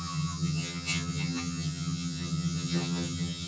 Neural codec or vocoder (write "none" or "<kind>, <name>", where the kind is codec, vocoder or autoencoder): vocoder, HiFi-GAN